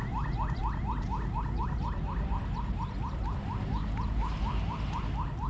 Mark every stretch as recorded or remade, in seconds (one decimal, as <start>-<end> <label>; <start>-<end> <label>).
0.0-5.5 recorded